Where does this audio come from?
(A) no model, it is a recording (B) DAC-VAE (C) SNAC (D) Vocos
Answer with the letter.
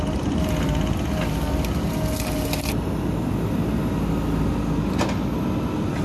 A